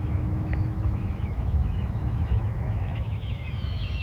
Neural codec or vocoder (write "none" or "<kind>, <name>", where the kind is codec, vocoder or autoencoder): autoencoder, DAC-VAE